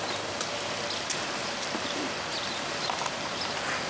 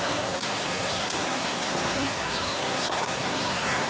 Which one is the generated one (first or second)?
second